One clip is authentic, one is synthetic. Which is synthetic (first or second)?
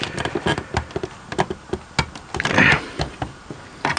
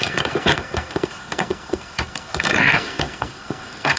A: second